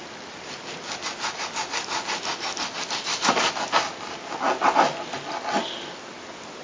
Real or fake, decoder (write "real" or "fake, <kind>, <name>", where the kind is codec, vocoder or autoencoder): real